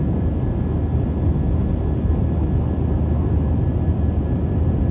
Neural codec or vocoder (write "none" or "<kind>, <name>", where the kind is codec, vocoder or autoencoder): none